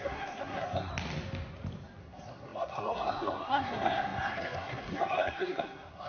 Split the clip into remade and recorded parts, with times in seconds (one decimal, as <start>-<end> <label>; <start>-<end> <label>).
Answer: 0.0-0.9 remade; 0.9-2.0 recorded; 2.0-6.1 remade